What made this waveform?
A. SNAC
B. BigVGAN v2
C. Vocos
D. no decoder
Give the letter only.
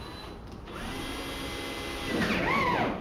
D